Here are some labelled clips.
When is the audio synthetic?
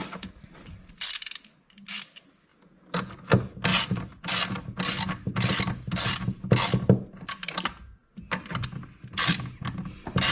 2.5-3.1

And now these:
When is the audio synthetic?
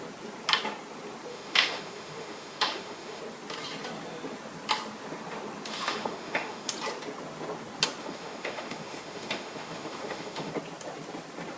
1.3-3.2; 5.7-6.7; 8.0-10.5